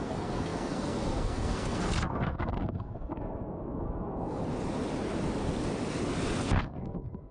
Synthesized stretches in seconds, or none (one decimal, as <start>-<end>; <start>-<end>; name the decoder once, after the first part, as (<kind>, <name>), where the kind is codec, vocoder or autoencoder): 0.0-4.4 (codec, SNAC); 6.4-7.3